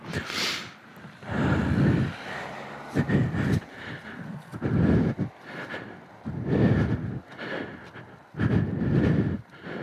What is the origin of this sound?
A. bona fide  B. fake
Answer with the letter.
A